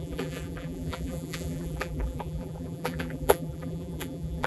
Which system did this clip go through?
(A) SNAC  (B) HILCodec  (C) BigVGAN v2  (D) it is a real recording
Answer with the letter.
C